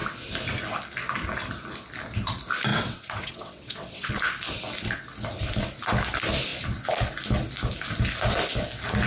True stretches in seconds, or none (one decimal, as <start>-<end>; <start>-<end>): 0.0-2.7; 4.1-9.1